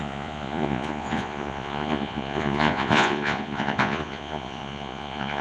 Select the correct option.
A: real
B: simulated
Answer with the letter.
B